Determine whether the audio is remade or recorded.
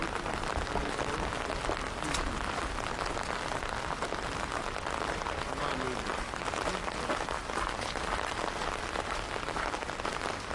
recorded